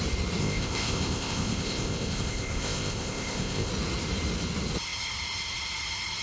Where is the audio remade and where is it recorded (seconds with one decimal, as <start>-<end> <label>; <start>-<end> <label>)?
0.0-0.4 recorded; 0.4-3.7 remade; 3.7-6.2 recorded